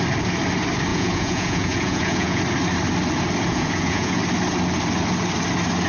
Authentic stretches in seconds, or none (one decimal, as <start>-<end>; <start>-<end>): 0.0-0.9; 2.4-3.5; 4.2-5.9